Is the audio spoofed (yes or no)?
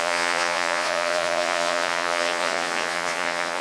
yes